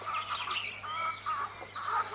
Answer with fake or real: real